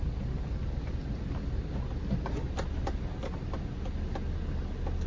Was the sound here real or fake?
real